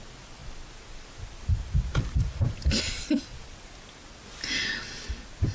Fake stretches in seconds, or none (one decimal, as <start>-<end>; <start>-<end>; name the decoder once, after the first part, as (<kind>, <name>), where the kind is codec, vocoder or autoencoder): none